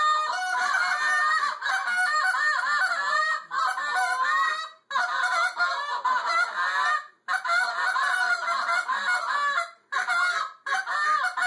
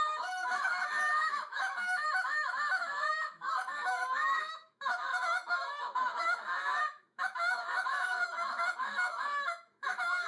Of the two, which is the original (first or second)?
first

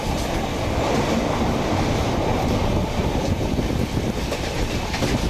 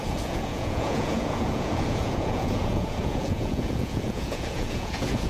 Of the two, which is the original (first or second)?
first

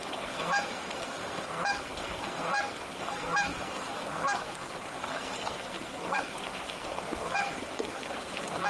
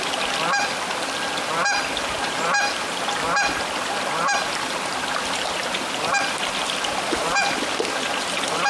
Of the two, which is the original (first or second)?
second